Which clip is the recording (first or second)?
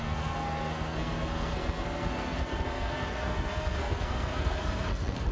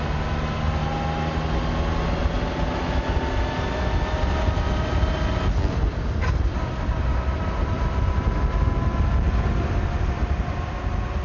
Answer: second